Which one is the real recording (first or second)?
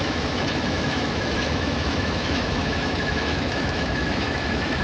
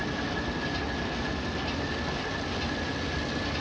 second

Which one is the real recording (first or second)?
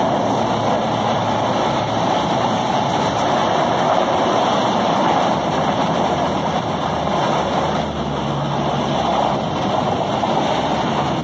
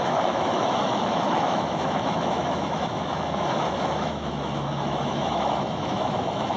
first